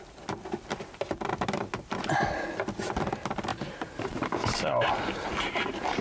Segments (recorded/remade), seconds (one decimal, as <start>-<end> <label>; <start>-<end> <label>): 0.0-3.5 recorded; 3.5-6.0 remade